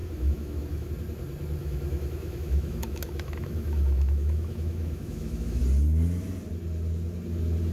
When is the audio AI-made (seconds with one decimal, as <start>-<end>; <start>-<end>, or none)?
0.0-0.9; 1.6-5.6